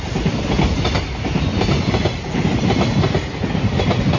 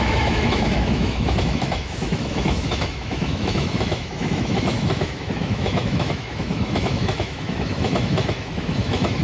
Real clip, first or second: first